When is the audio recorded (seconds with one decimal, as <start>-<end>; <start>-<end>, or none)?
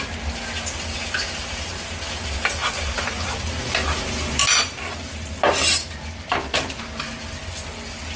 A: 0.0-8.2